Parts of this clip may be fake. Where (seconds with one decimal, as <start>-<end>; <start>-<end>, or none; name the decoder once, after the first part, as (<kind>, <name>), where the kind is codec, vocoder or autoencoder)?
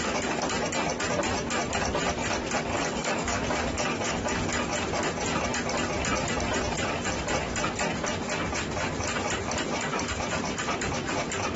2.7-4.5 (codec, DAC)